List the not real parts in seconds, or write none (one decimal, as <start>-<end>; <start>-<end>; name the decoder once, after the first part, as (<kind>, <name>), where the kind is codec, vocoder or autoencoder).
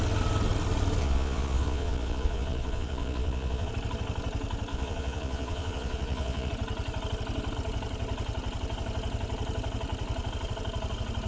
1.0-3.7 (vocoder, Vocos); 4.7-6.5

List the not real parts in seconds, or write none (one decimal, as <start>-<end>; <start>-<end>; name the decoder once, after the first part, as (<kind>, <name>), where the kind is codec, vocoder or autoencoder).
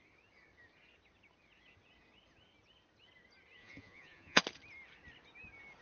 3.6-4.4 (vocoder, Vocos)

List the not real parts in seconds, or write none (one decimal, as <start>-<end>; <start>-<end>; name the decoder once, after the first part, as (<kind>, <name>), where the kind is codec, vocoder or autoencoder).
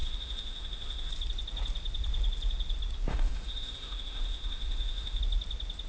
0.0-1.1 (autoencoder, DAC-VAE); 3.1-5.2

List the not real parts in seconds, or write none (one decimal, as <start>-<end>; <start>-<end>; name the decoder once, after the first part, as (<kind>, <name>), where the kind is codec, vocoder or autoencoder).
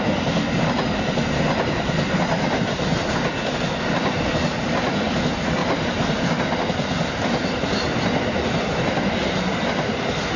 none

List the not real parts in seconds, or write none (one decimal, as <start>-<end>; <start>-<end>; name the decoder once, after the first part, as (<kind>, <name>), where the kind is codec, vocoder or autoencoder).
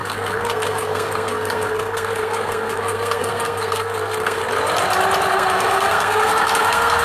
0.0-4.4 (codec, SNAC); 5.3-7.0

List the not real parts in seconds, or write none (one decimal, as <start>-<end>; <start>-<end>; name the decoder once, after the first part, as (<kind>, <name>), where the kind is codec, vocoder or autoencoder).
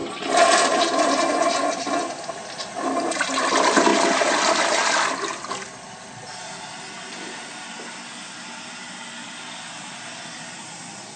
none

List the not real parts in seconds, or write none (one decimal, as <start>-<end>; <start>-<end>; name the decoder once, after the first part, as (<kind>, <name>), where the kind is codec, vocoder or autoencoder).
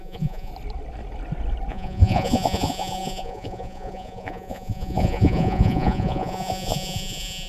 0.0-0.5 (vocoder, Vocos); 1.7-7.5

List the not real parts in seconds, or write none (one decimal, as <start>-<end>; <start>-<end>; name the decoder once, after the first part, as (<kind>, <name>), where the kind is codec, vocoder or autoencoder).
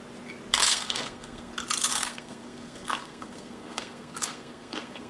0.6-1.5 (codec, SNAC); 1.9-5.1